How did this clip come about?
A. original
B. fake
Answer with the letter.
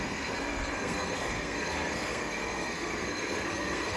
B